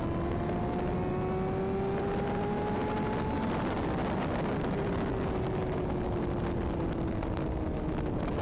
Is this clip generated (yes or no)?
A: no